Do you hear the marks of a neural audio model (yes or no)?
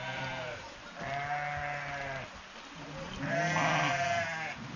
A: no